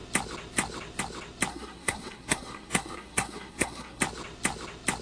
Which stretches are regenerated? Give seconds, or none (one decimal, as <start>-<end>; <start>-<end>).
1.5-4.0